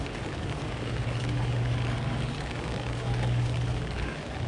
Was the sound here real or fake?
fake